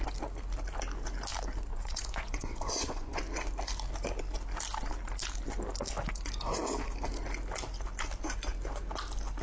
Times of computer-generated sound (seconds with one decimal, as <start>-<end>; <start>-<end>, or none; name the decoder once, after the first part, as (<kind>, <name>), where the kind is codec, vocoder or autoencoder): 1.7-3.2 (vocoder, Vocos)